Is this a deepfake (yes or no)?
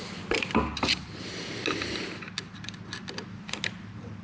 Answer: no